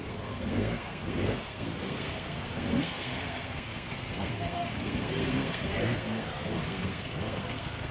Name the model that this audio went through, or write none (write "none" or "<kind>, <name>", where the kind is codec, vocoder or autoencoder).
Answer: codec, SNAC